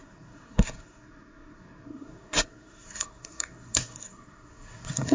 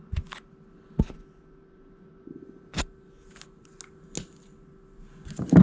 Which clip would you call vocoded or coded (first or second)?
first